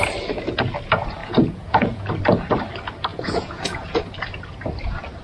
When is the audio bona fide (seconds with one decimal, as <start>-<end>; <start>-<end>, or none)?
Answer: 0.0-1.2; 2.1-3.1; 4.1-5.2